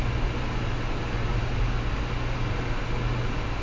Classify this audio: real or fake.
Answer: real